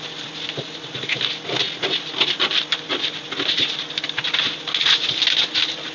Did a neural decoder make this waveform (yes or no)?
no